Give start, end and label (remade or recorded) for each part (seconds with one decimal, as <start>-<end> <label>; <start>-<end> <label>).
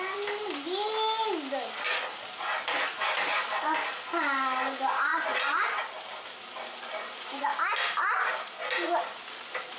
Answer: 0.0-9.8 recorded